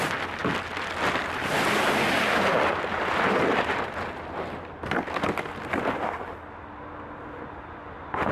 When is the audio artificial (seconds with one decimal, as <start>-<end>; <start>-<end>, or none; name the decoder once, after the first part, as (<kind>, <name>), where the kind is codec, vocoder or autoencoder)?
none